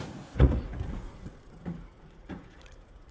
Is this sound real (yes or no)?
no